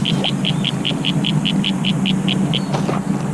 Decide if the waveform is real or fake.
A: real